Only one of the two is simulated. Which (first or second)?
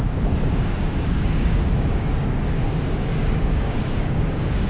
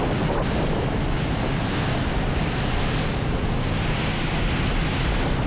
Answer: first